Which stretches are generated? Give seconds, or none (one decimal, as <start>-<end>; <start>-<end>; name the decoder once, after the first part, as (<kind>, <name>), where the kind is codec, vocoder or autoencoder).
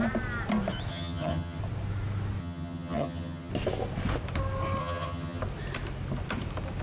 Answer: 0.9-1.6 (vocoder, HiFi-GAN); 2.4-3.5; 4.8-5.4